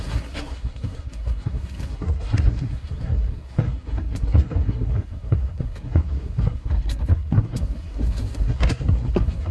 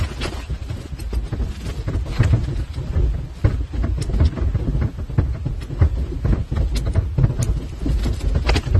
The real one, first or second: second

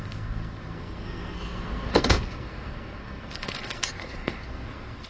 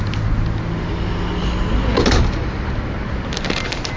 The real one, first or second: second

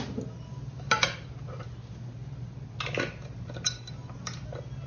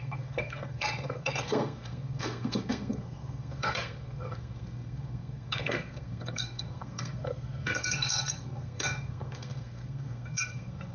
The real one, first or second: first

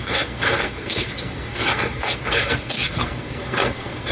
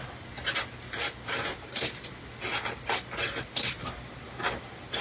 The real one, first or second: second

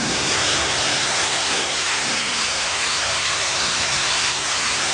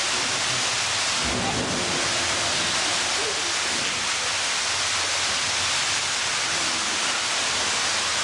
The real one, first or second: second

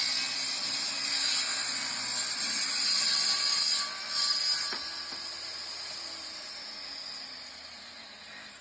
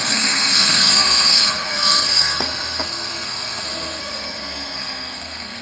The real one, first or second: first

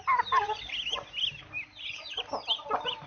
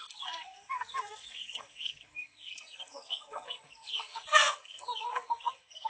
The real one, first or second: first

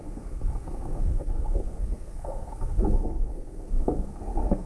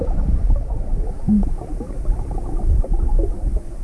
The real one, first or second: second